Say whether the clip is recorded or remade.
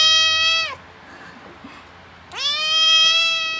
recorded